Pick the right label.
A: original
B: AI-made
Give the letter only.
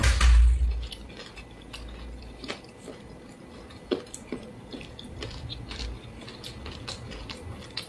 A